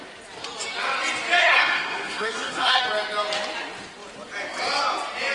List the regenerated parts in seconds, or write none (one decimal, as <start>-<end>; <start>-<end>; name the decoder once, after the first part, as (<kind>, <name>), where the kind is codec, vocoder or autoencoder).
1.4-2.8 (codec, SNAC)